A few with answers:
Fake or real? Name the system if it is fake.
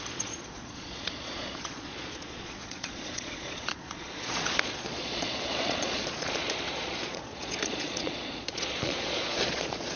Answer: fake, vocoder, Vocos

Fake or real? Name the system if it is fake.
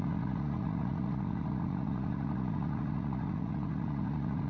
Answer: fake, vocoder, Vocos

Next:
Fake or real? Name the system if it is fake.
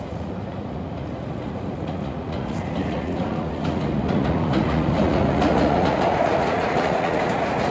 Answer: fake, vocoder, Vocos